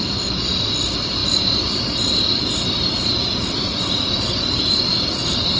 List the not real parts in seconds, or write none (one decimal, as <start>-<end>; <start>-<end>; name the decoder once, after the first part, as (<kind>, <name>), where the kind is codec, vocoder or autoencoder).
none